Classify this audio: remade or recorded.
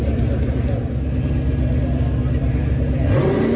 recorded